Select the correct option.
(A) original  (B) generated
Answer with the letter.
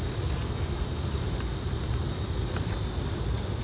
A